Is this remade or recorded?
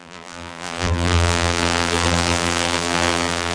remade